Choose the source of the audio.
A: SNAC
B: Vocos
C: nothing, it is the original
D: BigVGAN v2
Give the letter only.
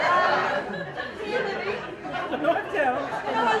C